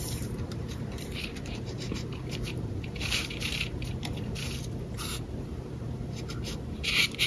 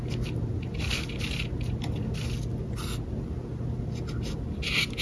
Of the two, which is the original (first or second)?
second